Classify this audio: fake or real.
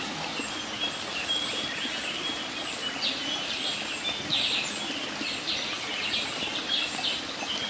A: real